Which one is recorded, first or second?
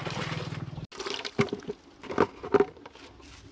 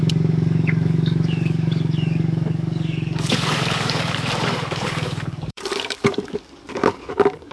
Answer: first